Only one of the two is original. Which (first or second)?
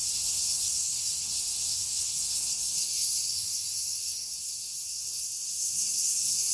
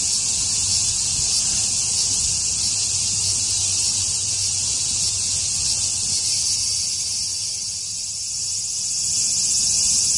second